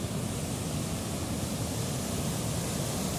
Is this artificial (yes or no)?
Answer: no